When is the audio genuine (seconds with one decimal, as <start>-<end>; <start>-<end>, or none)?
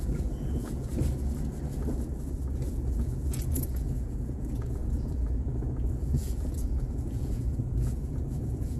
0.9-2.7